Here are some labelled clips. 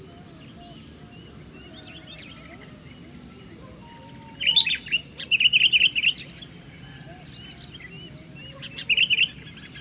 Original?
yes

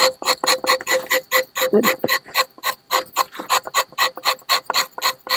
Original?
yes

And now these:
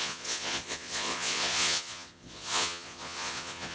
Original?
no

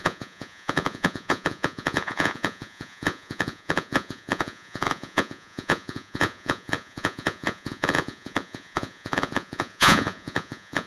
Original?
no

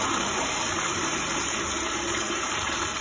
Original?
no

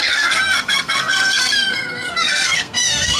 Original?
no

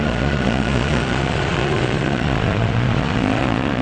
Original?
no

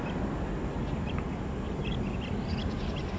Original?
yes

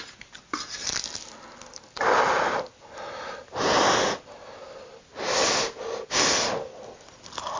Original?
yes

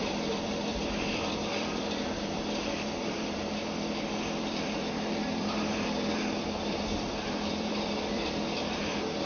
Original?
no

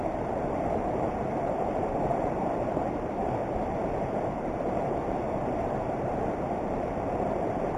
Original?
no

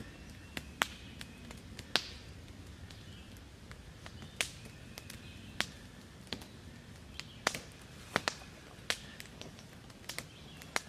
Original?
yes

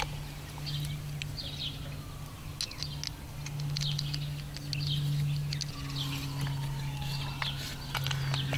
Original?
yes